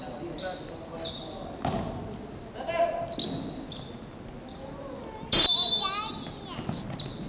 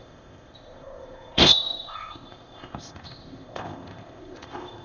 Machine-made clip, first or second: second